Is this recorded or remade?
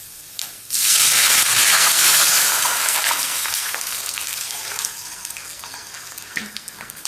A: remade